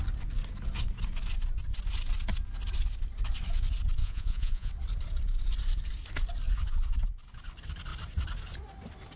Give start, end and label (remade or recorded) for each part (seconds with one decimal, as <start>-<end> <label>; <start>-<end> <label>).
0.0-4.0 recorded; 4.0-4.7 remade; 4.7-9.2 recorded